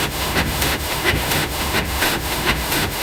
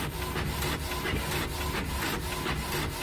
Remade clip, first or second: first